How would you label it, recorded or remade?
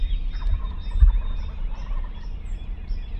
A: recorded